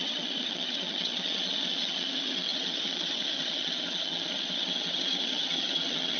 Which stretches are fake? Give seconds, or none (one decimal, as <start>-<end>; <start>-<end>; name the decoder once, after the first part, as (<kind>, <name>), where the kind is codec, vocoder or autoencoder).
0.0-6.2 (vocoder, HiFi-GAN)